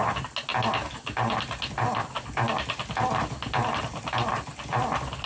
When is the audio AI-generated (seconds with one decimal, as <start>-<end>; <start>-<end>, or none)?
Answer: none